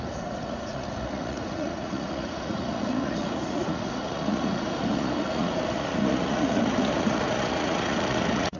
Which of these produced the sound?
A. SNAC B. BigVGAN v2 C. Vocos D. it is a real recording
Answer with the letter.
C